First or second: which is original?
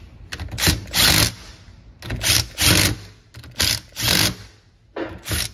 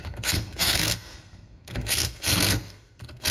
first